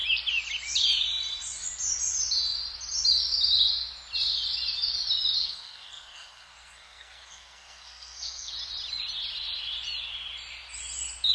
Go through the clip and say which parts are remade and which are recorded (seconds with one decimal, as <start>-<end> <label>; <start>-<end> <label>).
0.0-5.4 recorded; 5.4-8.5 remade; 8.5-11.3 recorded